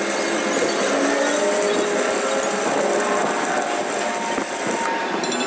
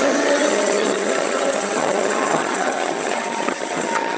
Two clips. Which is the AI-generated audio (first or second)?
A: second